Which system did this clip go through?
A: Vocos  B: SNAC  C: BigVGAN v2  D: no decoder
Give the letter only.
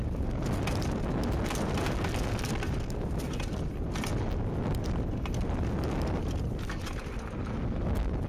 D